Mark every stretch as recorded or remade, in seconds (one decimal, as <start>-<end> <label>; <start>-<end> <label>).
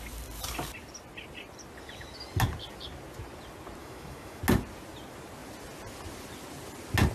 0.0-3.8 recorded; 3.8-4.4 remade; 4.4-7.1 recorded